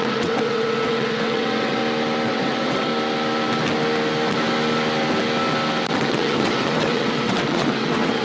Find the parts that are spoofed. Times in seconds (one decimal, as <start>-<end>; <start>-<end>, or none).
0.0-1.8; 2.3-2.9; 5.9-8.2